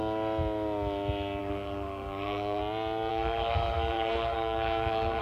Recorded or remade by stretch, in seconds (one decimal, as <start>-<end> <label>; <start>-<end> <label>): 0.0-1.4 recorded; 1.4-2.6 remade; 2.6-3.1 recorded; 3.1-5.2 remade